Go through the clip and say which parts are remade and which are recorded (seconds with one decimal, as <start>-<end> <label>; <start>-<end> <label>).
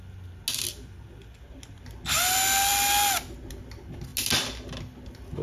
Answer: 0.0-5.4 recorded